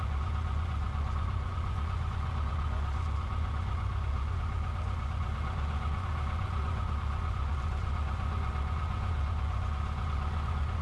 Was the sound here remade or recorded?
remade